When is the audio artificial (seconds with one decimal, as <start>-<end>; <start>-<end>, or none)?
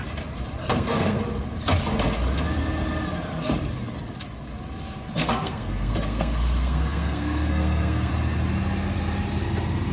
0.6-1.2; 5.2-8.1